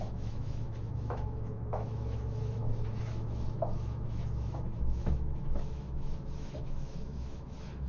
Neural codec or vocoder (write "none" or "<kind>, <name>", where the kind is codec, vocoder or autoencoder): autoencoder, DAC-VAE